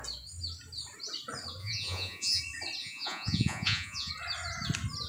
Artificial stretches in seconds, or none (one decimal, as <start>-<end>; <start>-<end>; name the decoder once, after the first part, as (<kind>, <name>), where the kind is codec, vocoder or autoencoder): 1.6-2.4 (vocoder, Vocos); 2.8-4.1